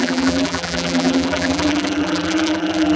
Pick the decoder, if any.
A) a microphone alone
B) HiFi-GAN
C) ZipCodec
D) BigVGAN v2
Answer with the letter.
D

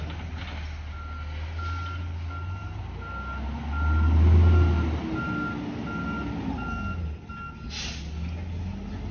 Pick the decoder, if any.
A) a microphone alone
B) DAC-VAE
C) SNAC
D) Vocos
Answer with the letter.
A